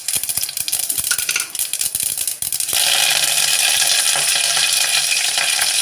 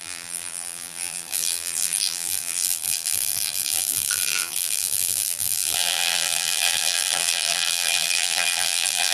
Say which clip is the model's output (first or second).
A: second